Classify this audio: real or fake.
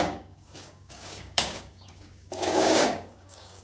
fake